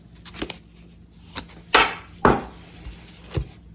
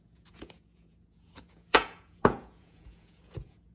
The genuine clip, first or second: first